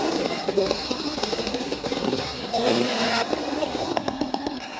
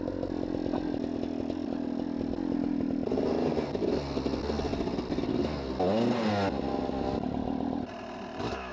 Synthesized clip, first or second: first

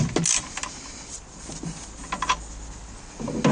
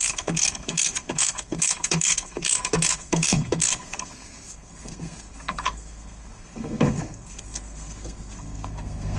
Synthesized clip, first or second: second